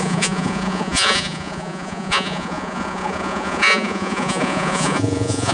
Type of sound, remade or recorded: remade